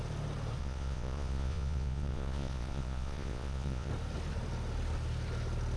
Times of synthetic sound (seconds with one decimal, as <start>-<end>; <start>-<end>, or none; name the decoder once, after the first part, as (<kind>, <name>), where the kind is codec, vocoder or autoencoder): 0.6-3.9 (vocoder, Vocos)